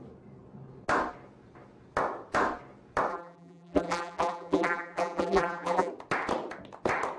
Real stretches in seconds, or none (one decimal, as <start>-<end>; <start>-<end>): 0.0-3.1; 5.9-7.2